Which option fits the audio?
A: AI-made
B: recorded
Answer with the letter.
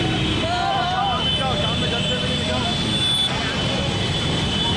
B